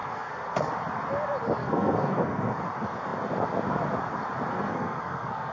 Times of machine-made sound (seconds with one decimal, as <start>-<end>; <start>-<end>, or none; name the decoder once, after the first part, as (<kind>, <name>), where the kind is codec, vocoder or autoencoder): 0.0-0.7 (codec, SNAC); 1.6-2.6; 4.5-5.5